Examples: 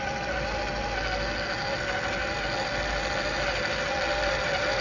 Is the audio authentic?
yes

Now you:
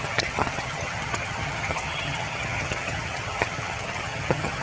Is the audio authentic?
no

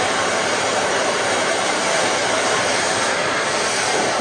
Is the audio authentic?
no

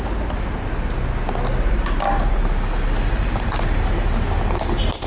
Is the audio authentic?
yes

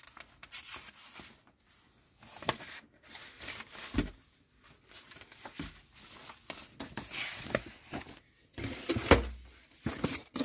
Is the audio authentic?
yes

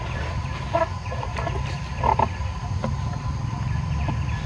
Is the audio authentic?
yes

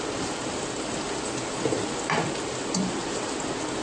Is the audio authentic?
yes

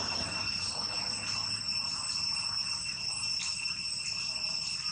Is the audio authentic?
yes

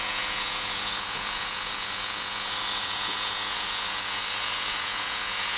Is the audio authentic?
no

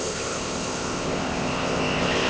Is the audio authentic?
no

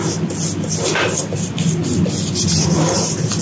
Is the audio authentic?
yes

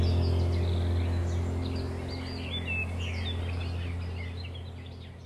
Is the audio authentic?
yes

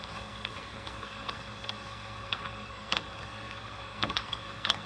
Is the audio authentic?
no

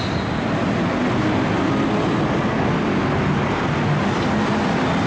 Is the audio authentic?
yes